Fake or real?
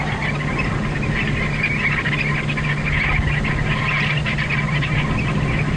real